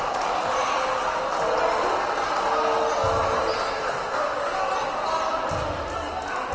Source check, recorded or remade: recorded